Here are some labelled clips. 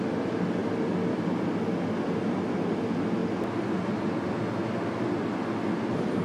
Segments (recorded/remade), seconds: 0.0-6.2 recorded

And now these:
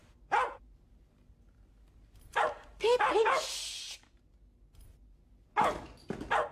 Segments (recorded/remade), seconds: 0.0-3.0 remade; 3.0-6.5 recorded